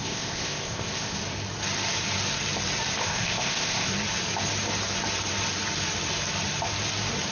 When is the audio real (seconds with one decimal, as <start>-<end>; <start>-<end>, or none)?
1.2-2.9; 3.9-7.3